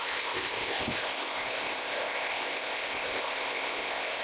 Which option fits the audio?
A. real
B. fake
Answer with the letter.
B